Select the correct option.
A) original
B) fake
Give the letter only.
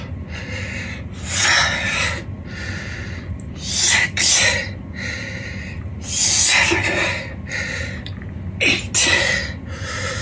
A